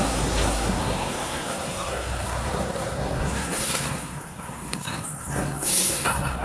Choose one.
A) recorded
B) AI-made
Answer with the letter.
B